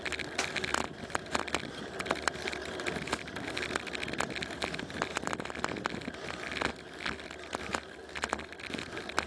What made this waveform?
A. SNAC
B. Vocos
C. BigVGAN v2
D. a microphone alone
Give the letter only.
D